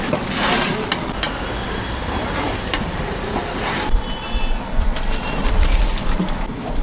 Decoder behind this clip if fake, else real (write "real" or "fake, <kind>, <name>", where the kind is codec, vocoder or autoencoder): real